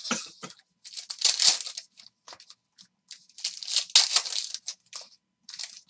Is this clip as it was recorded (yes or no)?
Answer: yes